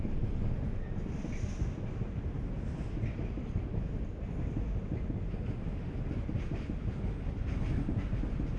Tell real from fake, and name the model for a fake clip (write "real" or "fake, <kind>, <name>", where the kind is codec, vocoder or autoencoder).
real